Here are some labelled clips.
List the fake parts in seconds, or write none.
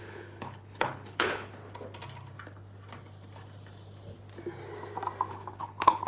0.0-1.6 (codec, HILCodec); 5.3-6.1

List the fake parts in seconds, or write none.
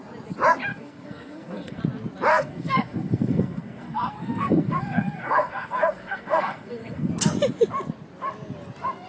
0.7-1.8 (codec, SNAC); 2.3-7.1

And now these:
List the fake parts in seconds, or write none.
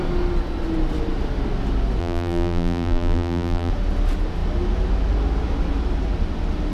2.0-3.7 (vocoder, BigVGAN v2)